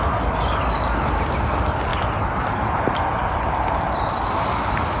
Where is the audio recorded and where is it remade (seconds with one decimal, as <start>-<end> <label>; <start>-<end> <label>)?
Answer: 0.0-5.0 recorded